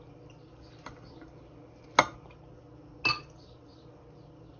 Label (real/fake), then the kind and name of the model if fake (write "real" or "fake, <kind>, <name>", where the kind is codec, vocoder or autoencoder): real